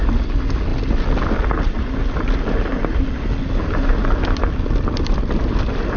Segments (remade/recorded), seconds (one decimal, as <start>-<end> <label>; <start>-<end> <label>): 0.0-6.0 recorded